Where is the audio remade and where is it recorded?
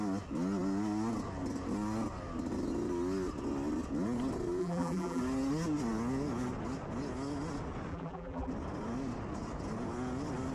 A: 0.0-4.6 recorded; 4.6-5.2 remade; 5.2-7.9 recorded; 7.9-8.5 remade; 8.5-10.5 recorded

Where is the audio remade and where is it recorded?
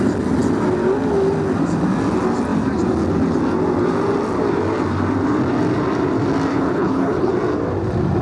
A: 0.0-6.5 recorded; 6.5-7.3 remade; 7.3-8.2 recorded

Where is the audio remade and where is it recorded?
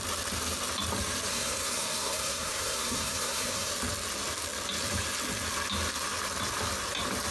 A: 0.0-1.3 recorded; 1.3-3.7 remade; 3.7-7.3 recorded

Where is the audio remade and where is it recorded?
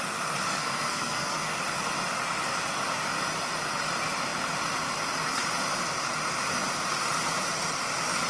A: 0.0-0.5 recorded; 0.5-1.6 remade; 1.6-8.3 recorded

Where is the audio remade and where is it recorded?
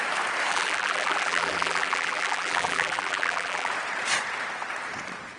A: 0.0-0.5 recorded; 0.5-3.7 remade; 3.7-5.4 recorded